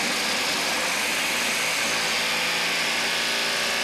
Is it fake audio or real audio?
real